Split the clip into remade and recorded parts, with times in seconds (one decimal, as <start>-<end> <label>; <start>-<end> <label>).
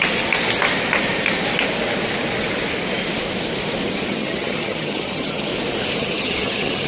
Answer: 0.0-4.1 recorded; 4.1-5.5 remade; 5.5-6.0 recorded; 6.0-6.9 remade